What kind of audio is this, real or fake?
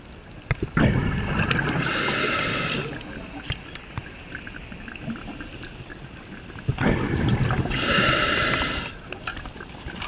real